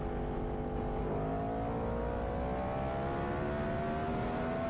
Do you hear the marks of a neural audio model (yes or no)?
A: no